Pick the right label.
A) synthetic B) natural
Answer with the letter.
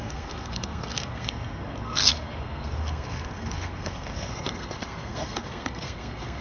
A